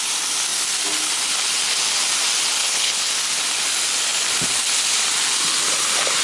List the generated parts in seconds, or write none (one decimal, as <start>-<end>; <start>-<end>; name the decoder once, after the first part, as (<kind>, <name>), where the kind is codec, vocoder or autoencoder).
2.6-3.1 (codec, HILCodec)